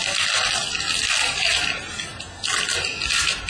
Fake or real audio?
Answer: real